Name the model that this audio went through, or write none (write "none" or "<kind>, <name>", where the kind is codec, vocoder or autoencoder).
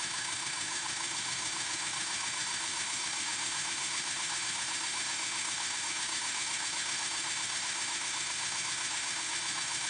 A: autoencoder, DAC-VAE